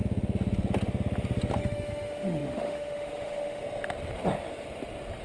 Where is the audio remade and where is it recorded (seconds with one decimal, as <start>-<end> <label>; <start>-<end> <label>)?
0.0-1.6 recorded; 1.6-3.6 remade; 3.6-5.2 recorded